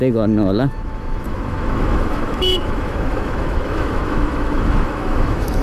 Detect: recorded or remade remade